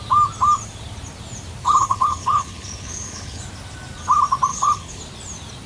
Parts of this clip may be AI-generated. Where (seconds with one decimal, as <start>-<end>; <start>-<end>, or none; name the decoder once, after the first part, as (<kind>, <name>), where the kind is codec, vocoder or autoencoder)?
1.6-3.4 (codec, HILCodec); 4.5-5.0